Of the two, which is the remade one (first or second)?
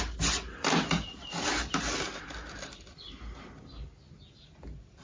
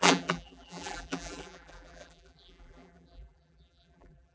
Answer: second